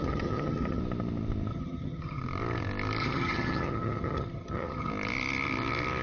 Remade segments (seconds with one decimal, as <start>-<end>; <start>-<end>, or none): 0.0-0.8; 1.5-2.2; 3.0-4.9